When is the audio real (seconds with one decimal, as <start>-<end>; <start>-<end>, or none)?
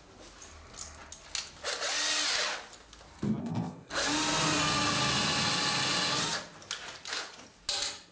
0.0-3.4; 3.9-8.1